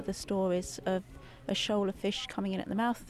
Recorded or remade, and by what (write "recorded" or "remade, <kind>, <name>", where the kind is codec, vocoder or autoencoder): recorded